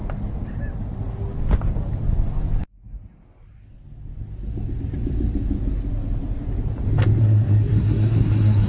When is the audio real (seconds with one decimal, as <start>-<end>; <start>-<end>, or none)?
0.0-7.2